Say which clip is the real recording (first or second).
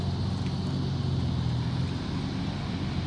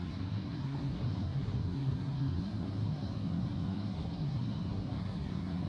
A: first